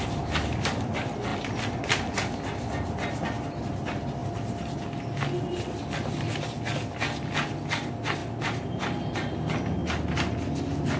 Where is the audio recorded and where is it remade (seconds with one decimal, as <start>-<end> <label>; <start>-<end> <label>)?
0.0-11.0 recorded

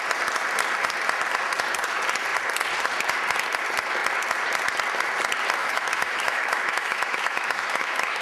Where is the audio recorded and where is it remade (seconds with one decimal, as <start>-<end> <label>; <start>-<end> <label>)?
0.0-5.6 recorded; 5.6-8.2 remade

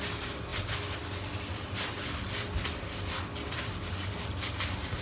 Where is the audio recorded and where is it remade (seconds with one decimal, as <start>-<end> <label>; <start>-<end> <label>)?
0.0-5.0 recorded